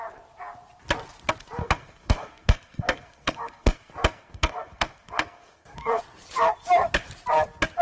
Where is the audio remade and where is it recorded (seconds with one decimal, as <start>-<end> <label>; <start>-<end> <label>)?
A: 0.0-1.6 recorded; 1.6-6.0 remade; 6.0-7.8 recorded